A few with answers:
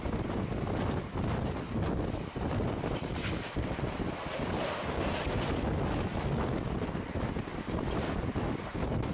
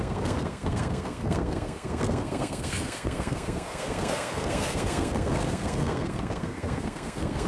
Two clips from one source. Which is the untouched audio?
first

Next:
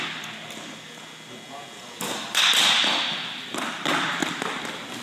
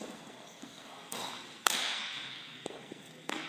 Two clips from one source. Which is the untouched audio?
first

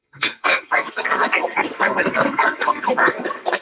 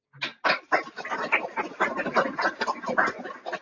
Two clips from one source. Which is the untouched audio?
second